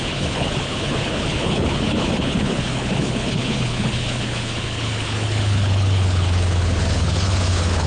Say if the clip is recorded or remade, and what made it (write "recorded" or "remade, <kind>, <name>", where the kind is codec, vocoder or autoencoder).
remade, codec, HILCodec